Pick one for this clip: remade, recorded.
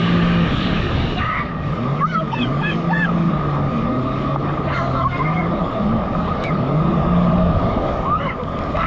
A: remade